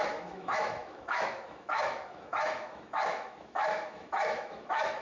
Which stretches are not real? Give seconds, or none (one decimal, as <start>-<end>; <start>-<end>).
0.0-5.0